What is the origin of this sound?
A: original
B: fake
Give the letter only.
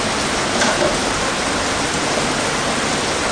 A